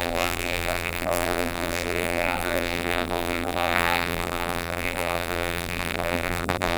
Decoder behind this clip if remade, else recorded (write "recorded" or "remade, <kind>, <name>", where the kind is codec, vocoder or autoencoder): remade, vocoder, BigVGAN v2